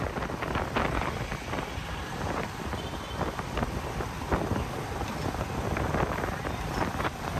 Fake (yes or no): no